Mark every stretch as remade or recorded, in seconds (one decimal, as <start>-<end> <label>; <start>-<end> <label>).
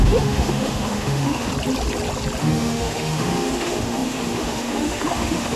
0.0-1.5 remade; 1.5-2.4 recorded; 2.4-5.6 remade